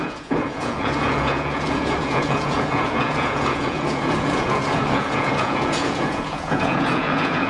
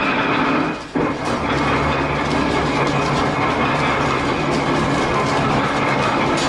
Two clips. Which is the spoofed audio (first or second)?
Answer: first